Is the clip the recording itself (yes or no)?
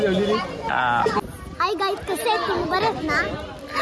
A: yes